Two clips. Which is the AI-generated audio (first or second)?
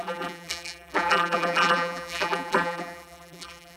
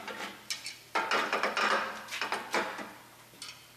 first